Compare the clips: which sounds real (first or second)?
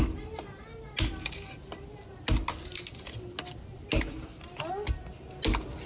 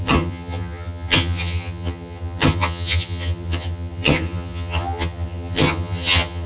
first